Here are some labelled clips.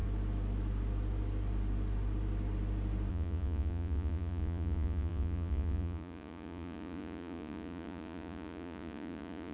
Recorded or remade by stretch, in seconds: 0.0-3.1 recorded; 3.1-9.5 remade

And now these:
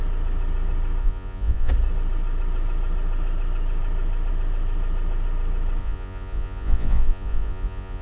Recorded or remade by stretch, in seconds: 0.0-1.0 recorded; 1.0-1.7 remade; 1.7-5.8 recorded; 5.8-8.0 remade

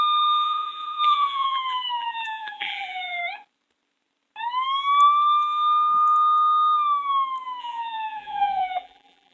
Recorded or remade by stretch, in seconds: 0.0-3.2 remade; 3.2-7.6 recorded; 7.6-9.3 remade